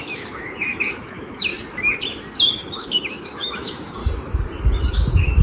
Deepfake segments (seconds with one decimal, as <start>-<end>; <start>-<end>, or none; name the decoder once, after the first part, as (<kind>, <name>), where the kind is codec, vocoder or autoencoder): 0.0-1.5 (autoencoder, DAC-VAE); 2.9-4.0; 4.9-5.4